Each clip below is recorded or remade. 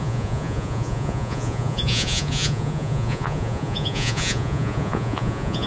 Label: remade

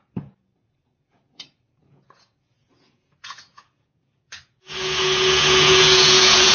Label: remade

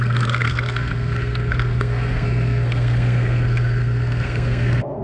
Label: remade